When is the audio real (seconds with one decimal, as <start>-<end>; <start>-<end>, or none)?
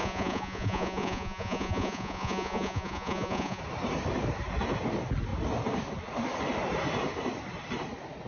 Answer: 3.6-8.3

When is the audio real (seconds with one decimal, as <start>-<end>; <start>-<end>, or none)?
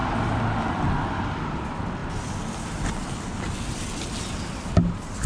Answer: 0.0-5.3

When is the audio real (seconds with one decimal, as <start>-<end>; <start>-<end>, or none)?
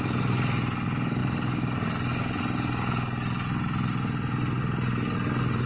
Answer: 0.0-5.7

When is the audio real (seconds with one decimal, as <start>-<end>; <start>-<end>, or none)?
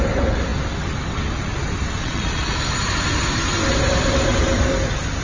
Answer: 0.0-2.0; 2.5-5.2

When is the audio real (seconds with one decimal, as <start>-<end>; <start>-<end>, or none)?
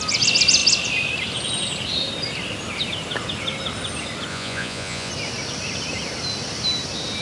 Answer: 0.0-4.3; 5.1-7.2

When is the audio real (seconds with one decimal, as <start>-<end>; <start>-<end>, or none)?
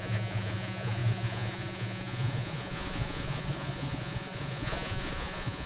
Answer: none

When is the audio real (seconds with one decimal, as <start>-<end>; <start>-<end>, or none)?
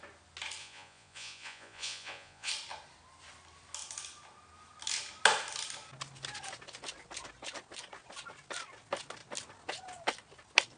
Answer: 0.0-0.6; 2.5-10.8